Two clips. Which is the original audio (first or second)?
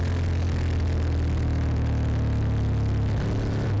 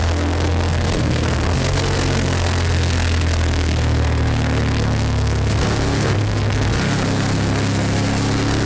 first